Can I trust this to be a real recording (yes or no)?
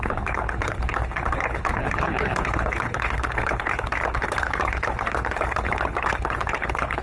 no